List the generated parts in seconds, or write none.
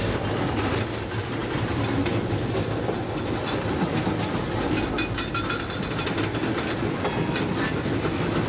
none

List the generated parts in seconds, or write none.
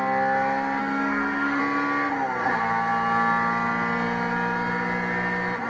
0.8-1.6 (codec, SNAC)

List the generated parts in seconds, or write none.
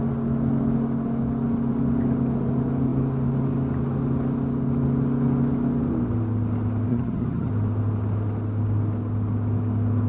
6.9-7.5 (vocoder, HiFi-GAN)